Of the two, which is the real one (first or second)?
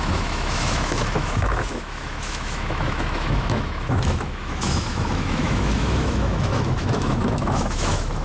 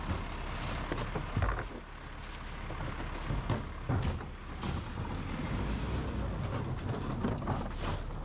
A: second